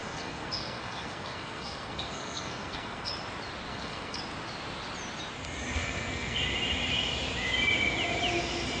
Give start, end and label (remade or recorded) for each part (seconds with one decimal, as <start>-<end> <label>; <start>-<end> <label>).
0.0-3.1 remade; 3.1-3.7 recorded; 3.7-4.2 remade; 4.2-5.7 recorded; 5.7-6.4 remade; 6.4-8.8 recorded